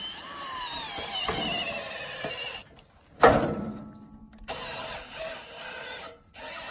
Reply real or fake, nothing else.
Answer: real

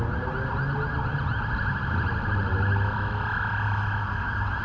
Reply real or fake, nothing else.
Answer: real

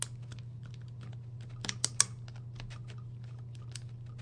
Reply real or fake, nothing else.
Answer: real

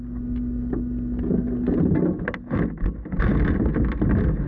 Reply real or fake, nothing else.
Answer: real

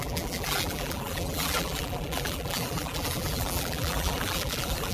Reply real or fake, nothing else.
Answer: fake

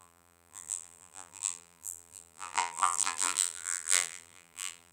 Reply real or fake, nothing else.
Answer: fake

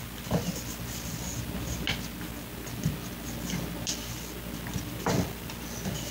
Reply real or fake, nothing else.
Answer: real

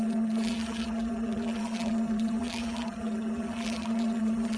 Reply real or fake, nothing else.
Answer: fake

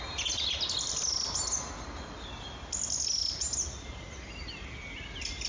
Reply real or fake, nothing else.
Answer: real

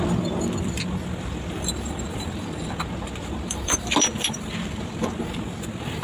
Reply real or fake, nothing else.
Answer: fake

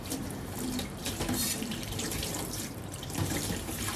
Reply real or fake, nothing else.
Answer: fake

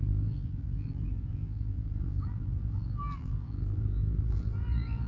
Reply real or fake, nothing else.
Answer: fake